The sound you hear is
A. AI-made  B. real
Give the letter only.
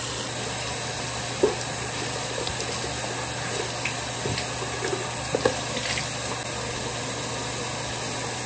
B